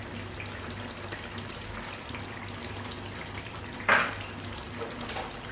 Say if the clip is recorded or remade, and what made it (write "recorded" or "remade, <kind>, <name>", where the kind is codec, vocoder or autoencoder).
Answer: recorded